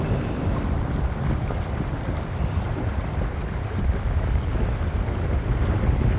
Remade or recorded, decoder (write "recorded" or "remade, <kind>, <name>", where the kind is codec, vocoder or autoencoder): recorded